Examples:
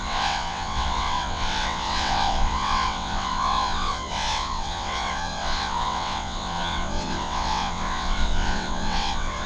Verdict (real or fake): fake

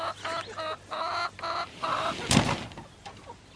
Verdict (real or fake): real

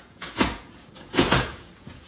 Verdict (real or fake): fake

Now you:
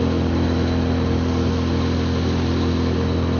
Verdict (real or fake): real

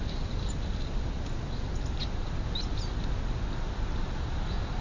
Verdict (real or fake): real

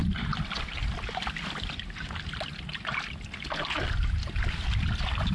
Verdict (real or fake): real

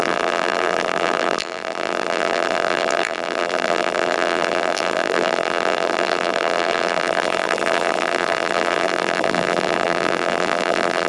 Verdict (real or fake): fake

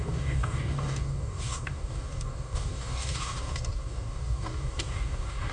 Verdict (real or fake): fake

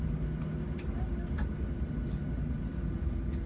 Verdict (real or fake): real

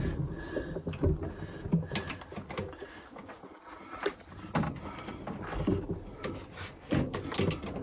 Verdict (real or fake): real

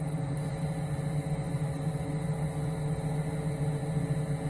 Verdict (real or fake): real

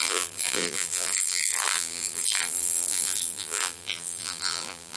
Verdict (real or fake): fake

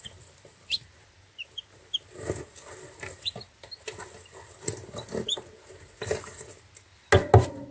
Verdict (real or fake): real